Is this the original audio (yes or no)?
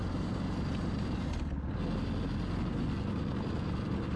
yes